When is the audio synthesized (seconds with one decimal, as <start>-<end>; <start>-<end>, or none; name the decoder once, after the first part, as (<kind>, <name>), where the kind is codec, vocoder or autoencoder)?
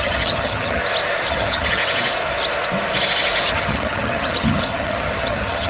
0.0-0.8 (vocoder, HiFi-GAN); 1.3-1.8; 3.5-5.7